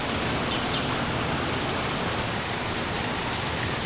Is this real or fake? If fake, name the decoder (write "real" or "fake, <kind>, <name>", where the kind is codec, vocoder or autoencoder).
real